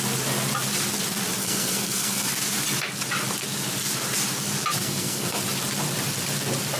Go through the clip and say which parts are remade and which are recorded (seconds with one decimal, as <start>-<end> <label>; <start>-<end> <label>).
0.0-1.4 recorded; 1.4-2.3 remade; 2.3-4.8 recorded; 4.8-5.4 remade; 5.4-6.8 recorded